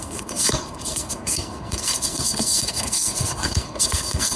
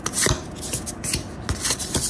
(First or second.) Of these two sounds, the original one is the second